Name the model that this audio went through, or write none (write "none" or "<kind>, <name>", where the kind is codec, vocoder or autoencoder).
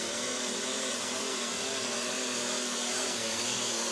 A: codec, SNAC